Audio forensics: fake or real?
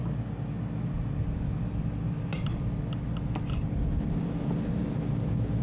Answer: real